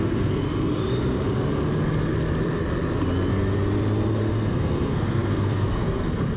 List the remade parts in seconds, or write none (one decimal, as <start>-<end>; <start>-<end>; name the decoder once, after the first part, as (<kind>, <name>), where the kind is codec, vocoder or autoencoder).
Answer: 0.0-0.4 (codec, SNAC); 4.2-6.4